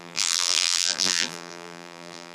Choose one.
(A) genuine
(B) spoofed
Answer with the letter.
B